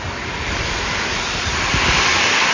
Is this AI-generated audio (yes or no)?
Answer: yes